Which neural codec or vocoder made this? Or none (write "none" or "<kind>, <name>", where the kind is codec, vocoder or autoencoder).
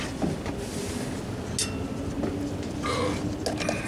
none